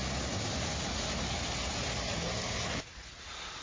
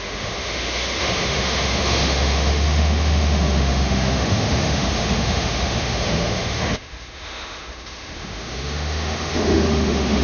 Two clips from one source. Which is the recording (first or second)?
first